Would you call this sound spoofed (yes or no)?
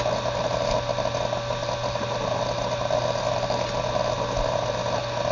no